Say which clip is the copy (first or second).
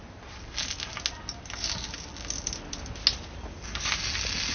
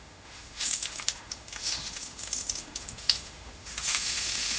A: second